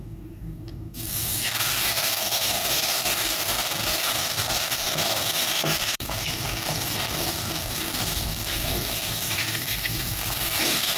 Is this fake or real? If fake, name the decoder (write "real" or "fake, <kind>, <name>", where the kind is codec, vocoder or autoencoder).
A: fake, codec, DAC